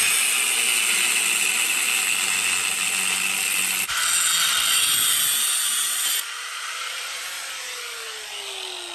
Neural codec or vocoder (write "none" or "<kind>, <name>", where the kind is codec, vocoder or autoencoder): none